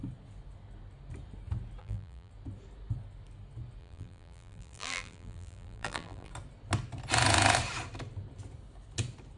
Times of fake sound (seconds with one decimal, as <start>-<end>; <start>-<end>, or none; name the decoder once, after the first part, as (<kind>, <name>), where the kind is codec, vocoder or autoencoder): 1.8-2.3 (vocoder, BigVGAN v2); 3.8-6.3